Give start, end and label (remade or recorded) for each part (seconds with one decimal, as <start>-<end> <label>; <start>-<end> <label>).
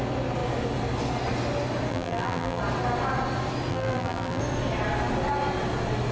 0.0-1.9 recorded; 1.9-2.6 remade; 2.6-3.7 recorded; 3.7-4.4 remade; 4.4-6.1 recorded